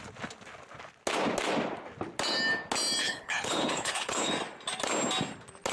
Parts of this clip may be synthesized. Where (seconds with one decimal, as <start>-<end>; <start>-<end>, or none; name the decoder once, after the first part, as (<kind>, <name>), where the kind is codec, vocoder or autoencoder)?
3.0-4.3 (codec, HILCodec)